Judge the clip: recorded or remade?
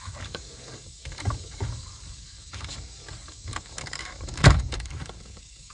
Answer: remade